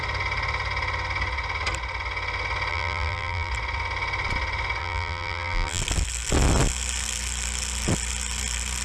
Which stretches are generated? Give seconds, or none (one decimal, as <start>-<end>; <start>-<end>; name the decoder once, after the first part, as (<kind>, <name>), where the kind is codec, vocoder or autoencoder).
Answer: 2.7-3.5 (vocoder, BigVGAN v2); 4.8-5.8